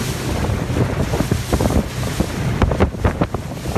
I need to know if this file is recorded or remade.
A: recorded